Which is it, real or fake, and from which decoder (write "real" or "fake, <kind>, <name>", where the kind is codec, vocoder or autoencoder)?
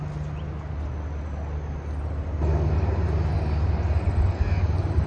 real